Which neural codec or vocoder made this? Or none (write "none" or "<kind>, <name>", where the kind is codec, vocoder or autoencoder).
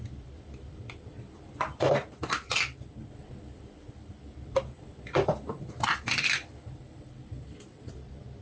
vocoder, BigVGAN v2